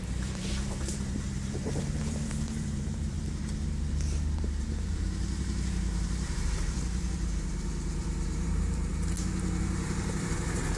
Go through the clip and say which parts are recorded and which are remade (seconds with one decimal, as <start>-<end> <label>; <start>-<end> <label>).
0.0-8.9 remade; 8.9-9.6 recorded; 9.6-10.8 remade